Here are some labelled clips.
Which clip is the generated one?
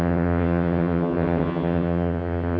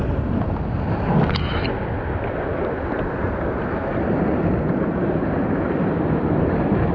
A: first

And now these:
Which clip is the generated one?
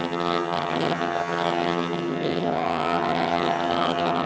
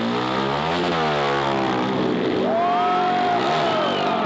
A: first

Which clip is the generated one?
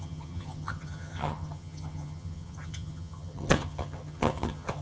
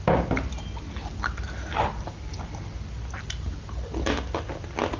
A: first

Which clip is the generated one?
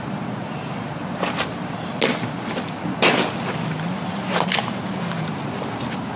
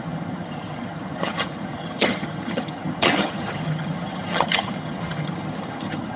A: second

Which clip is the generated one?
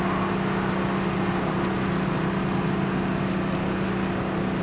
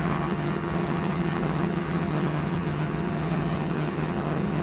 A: second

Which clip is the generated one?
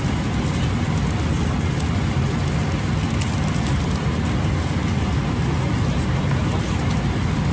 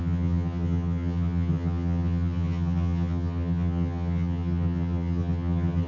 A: second